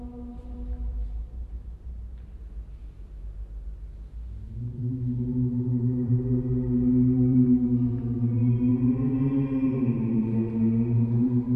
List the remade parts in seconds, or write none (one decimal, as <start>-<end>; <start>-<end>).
0.0-2.4; 4.5-8.7; 9.2-11.6